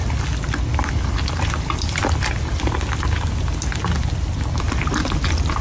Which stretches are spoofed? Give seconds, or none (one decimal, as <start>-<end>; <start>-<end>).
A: none